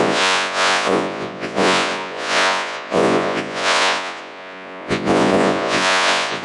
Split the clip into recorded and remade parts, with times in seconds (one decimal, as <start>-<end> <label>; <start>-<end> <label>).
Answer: 0.0-6.4 remade